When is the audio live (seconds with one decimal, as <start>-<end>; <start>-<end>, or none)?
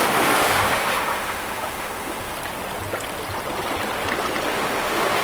2.3-4.5